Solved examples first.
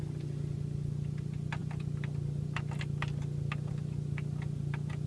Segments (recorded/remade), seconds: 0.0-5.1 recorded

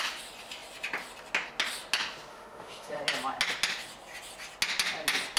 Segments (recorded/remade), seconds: 0.0-2.3 recorded; 2.3-3.0 remade; 3.0-5.4 recorded